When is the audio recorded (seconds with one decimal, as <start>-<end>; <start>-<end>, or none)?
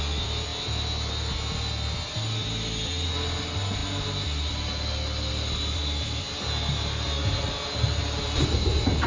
0.0-9.1